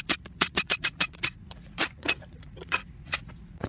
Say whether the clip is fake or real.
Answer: fake